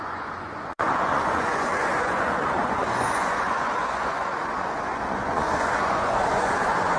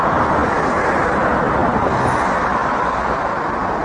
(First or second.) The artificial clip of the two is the first